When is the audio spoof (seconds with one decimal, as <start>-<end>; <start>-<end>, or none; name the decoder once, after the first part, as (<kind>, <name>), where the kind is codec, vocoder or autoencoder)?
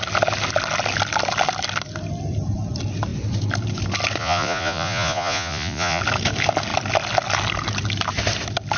4.2-6.0 (vocoder, Vocos)